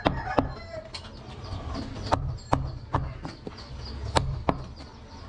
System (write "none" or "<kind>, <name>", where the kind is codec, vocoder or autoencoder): none